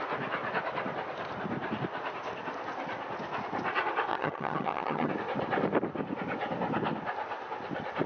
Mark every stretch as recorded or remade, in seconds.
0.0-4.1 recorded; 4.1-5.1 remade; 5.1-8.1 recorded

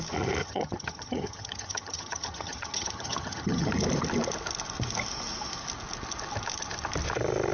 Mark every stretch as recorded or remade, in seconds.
0.0-0.4 recorded; 0.4-3.7 remade; 3.7-7.5 recorded

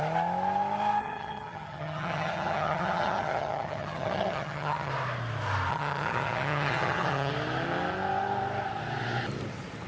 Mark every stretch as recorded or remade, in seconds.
0.0-1.0 recorded; 1.0-4.9 remade; 4.9-5.7 recorded; 5.7-7.3 remade; 7.3-9.9 recorded

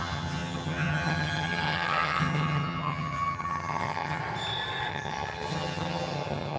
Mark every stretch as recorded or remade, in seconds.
0.0-4.2 remade; 4.2-4.9 recorded; 4.9-6.6 remade

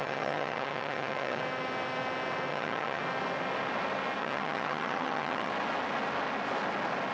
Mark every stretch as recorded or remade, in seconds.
0.0-1.4 remade; 1.4-2.5 recorded; 2.5-3.0 remade; 3.0-4.2 recorded; 4.2-5.5 remade; 5.5-7.1 recorded